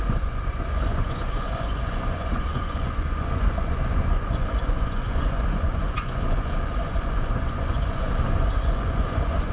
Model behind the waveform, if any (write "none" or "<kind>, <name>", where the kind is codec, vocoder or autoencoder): vocoder, Vocos